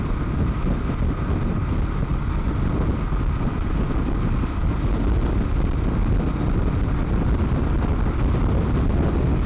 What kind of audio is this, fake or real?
real